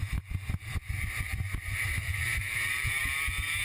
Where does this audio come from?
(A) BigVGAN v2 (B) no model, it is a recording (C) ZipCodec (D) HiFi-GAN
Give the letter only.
A